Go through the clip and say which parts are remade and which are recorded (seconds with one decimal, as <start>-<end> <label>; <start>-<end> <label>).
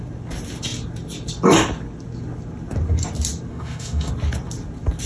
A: 0.0-3.5 recorded; 3.5-4.1 remade; 4.1-5.1 recorded